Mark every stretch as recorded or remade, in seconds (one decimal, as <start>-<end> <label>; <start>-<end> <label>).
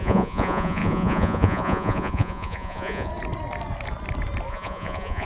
0.0-3.1 remade; 3.1-4.5 recorded; 4.5-5.2 remade